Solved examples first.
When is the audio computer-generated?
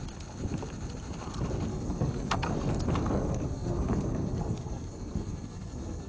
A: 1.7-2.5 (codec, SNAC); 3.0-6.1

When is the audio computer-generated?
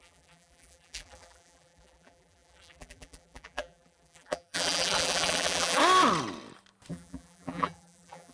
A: 0.0-5.8 (vocoder, BigVGAN v2); 6.9-8.3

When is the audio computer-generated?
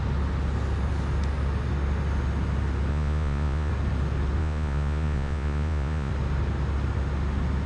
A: 2.9-3.7 (vocoder, Vocos); 4.4-6.1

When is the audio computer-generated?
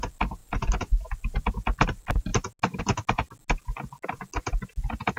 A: 0.4-1.0 (vocoder, BigVGAN v2)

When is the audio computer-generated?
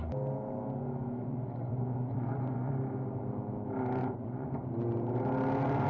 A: 1.2-2.7 (vocoder, Vocos); 4.0-4.5